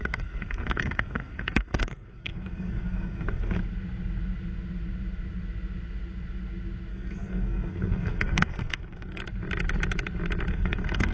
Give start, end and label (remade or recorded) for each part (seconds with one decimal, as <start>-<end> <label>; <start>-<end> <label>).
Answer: 0.0-3.6 remade; 3.6-6.9 recorded; 6.9-9.2 remade; 9.2-10.5 recorded; 10.5-11.1 remade